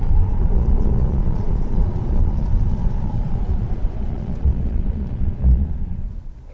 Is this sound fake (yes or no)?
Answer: yes